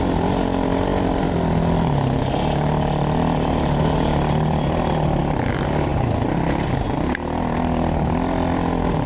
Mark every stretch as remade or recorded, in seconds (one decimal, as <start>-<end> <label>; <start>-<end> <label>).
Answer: 0.0-9.1 recorded